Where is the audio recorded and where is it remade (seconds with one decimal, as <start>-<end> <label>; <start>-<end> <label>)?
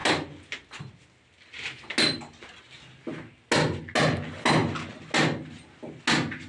0.0-6.5 recorded